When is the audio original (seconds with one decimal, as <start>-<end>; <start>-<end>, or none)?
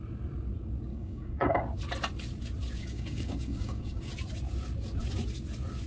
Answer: 0.0-0.9; 1.6-2.8; 4.1-5.9